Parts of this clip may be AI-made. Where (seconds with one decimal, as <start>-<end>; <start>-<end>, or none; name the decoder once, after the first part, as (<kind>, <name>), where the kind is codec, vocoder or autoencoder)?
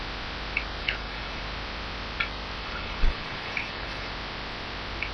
0.8-1.4 (codec, HILCodec); 2.6-4.1